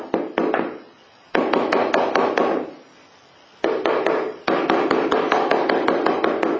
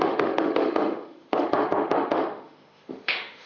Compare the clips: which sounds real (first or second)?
first